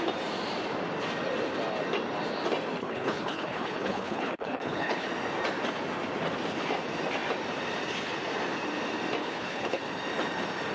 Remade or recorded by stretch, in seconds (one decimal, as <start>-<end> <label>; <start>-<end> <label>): 0.0-2.8 recorded; 2.8-5.1 remade; 5.1-9.2 recorded; 9.2-9.8 remade; 9.8-10.7 recorded